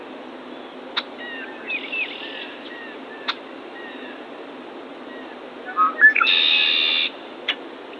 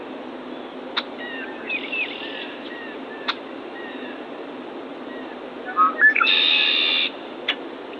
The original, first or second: first